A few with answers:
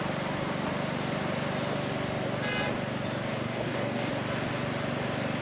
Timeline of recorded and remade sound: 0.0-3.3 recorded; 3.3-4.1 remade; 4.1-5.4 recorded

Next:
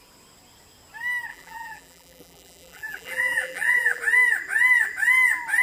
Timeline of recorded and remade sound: 0.0-1.3 recorded; 1.3-4.0 remade; 4.0-5.6 recorded

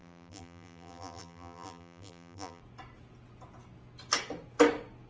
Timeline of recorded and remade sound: 0.0-2.6 remade; 2.6-5.1 recorded

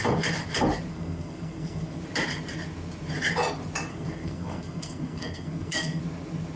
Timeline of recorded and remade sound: 0.0-0.9 recorded; 0.9-2.0 remade; 2.0-3.9 recorded; 3.9-6.0 remade; 6.0-6.6 recorded